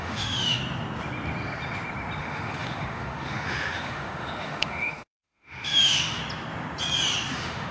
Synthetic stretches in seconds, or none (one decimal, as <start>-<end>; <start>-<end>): 0.0-0.6; 2.2-6.2; 7.3-7.7